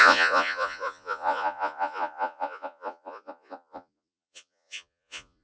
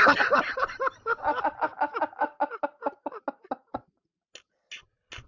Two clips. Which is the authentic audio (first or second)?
second